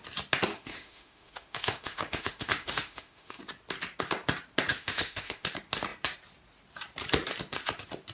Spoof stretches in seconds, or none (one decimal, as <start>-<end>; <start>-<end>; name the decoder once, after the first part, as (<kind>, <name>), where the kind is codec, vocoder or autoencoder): 0.5-3.4 (autoencoder, DAC-VAE); 4.7-5.5